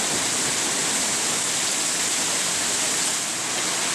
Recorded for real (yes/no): yes